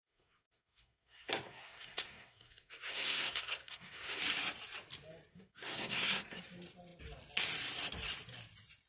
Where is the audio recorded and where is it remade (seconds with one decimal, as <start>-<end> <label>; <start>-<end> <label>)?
0.0-4.2 remade; 4.2-5.3 recorded; 5.3-6.4 remade; 6.4-8.9 recorded